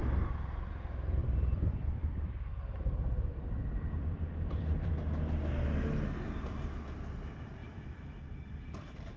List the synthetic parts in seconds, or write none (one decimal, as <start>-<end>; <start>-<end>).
1.2-4.9; 7.6-8.2